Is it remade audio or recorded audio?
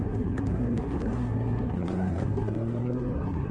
remade